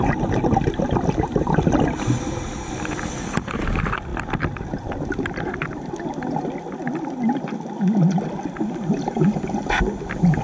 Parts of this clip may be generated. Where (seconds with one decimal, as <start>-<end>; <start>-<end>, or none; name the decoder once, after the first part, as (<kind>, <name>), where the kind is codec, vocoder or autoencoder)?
none